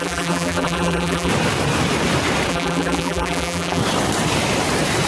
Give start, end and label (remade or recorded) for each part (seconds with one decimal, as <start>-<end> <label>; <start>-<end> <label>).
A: 0.0-1.3 remade; 1.3-2.5 recorded; 2.5-3.8 remade; 3.8-5.1 recorded